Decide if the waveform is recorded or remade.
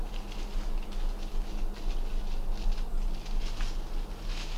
recorded